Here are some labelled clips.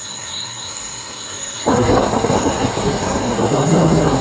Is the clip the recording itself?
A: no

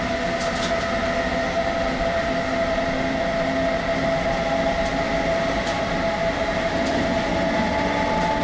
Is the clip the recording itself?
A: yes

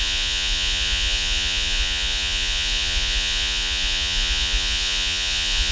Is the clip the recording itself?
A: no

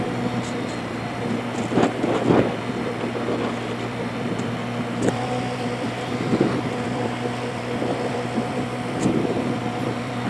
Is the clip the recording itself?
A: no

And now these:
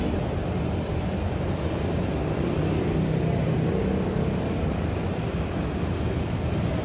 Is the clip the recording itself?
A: yes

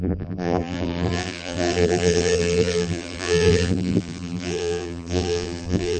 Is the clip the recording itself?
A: no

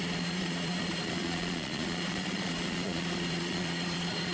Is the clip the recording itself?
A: no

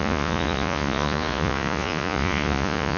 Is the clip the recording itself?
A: no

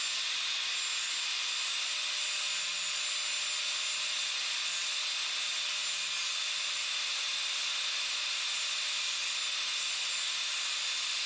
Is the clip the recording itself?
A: yes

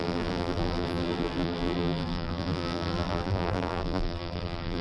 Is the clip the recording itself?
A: no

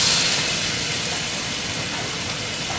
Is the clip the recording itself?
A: yes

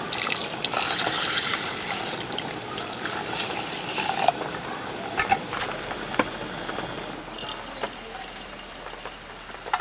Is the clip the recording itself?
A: yes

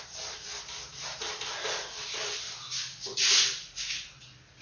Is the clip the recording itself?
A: yes